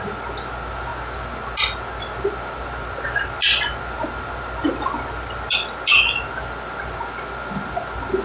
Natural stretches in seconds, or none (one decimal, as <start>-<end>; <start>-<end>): 0.0-8.2